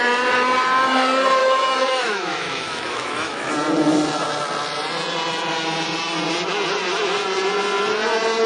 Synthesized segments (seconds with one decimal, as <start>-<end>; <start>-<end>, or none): 1.4-3.5